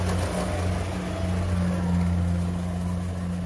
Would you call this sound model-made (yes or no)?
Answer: no